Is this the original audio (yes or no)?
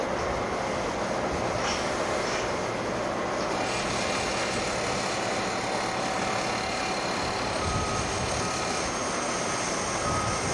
yes